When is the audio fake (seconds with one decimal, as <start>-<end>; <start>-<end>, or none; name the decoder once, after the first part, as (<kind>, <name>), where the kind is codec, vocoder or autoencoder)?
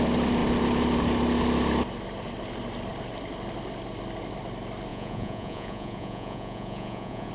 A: 4.9-7.3 (vocoder, Vocos)